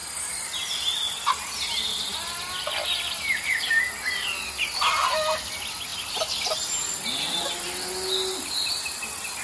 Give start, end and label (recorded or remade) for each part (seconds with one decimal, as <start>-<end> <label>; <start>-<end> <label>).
0.0-9.4 recorded